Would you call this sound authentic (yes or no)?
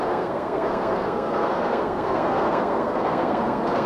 no